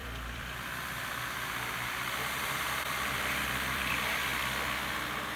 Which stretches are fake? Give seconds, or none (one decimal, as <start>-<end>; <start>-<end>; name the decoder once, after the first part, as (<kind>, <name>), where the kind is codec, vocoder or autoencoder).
0.0-4.3 (vocoder, BigVGAN v2)